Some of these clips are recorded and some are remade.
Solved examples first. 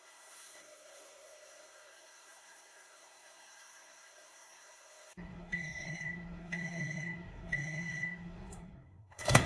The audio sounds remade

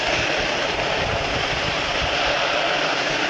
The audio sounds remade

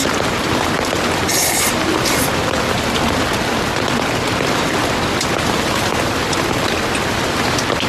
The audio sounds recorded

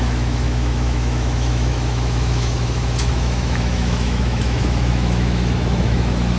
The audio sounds remade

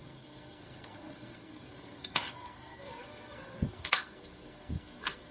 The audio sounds remade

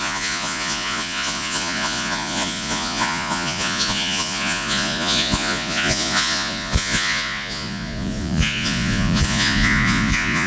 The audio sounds remade